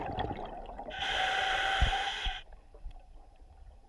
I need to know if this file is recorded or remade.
recorded